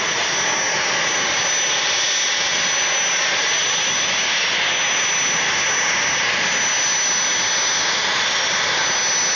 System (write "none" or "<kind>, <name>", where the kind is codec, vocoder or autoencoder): none